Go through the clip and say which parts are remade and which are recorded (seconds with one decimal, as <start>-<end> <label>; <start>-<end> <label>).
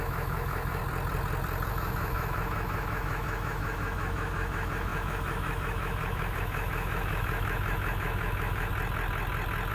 0.0-0.8 remade; 0.8-1.7 recorded; 1.7-8.7 remade; 8.7-9.7 recorded